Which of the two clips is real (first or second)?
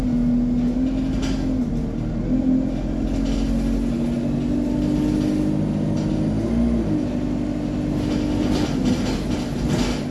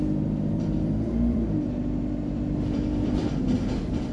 first